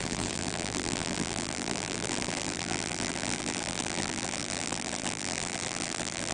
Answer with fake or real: fake